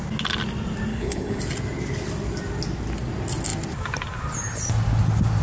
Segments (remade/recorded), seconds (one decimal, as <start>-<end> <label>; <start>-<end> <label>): 0.0-0.9 recorded; 0.9-1.4 remade; 1.4-5.4 recorded